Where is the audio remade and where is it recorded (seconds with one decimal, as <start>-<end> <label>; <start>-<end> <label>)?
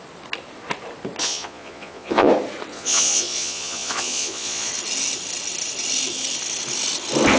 0.0-1.2 recorded; 1.2-2.3 remade; 2.3-2.7 recorded; 2.7-4.7 remade; 4.7-7.4 recorded